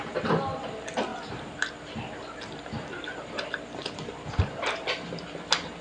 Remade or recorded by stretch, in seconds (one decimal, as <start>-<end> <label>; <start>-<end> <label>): 0.0-5.8 recorded